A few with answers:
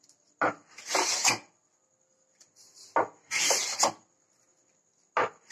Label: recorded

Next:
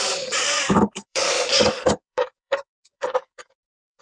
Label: remade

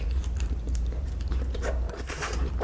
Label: remade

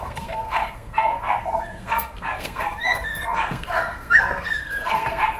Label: remade